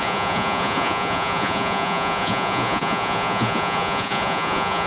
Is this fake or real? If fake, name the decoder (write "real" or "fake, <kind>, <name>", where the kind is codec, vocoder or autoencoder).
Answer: fake, vocoder, Vocos